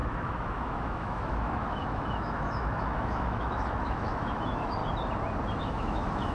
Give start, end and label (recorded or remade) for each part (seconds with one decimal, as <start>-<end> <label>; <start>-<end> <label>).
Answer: 0.0-4.8 remade; 4.8-5.6 recorded; 5.6-6.3 remade